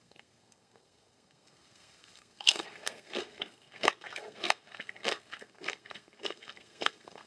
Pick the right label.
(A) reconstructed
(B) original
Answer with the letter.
A